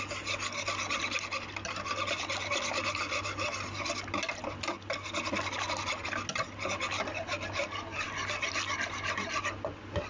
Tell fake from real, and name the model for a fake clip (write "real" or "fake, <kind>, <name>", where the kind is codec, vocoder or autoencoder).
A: real